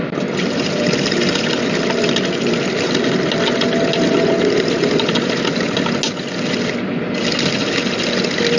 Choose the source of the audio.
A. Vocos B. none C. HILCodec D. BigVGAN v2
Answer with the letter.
B